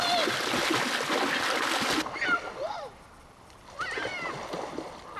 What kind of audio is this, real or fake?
real